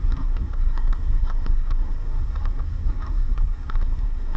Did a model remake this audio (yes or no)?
yes